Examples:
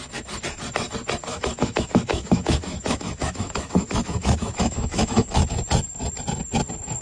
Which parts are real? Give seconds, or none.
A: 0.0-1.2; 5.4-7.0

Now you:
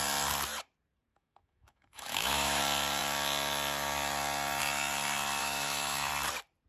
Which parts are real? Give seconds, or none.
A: 0.0-1.1; 2.6-5.4; 6.1-6.7

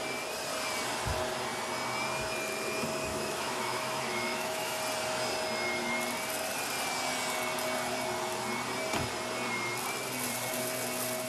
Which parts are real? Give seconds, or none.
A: 0.0-3.1; 4.8-11.3

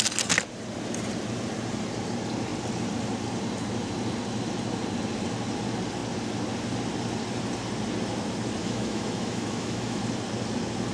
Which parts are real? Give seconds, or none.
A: 0.0-8.6; 10.0-10.9

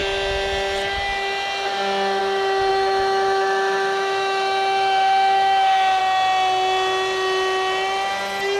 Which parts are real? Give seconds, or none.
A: 0.0-2.7; 6.0-8.6